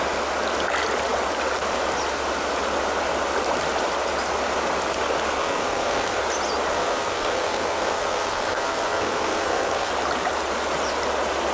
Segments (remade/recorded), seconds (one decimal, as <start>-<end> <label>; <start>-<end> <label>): 0.0-5.4 recorded; 5.4-6.2 remade; 6.2-6.7 recorded; 6.7-9.9 remade; 9.9-11.5 recorded